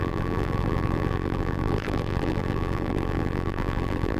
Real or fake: fake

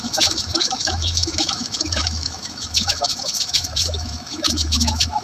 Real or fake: fake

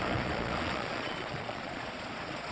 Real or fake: fake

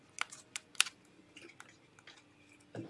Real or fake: real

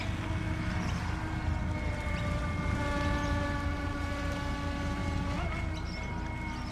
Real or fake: real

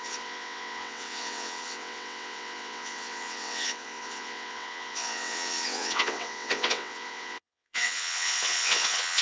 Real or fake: fake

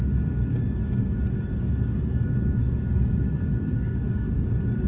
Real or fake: fake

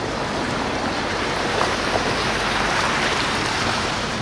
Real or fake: fake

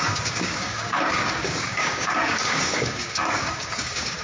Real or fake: fake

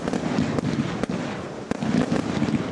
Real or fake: real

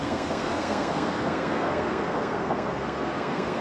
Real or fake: fake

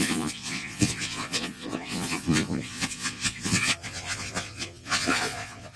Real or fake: fake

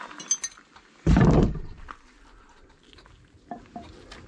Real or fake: real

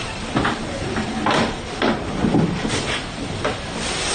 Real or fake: fake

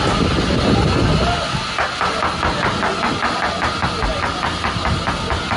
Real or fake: real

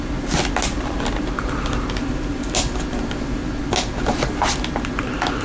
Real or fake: real